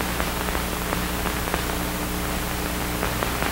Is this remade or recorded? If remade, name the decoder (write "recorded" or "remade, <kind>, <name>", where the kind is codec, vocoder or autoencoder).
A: recorded